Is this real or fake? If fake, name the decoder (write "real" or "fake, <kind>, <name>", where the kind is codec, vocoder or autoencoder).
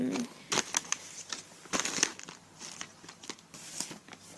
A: real